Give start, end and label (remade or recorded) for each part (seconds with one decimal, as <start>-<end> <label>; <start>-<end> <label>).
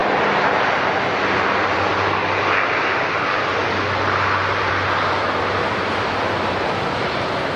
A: 0.0-1.9 remade; 1.9-4.4 recorded; 4.4-6.1 remade; 6.1-7.6 recorded